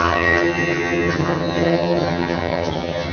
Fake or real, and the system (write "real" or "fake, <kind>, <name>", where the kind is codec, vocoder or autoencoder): fake, vocoder, HiFi-GAN